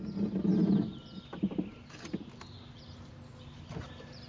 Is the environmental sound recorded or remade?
recorded